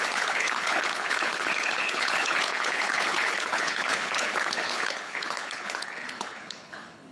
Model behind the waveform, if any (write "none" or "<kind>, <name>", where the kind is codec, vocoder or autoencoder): codec, HILCodec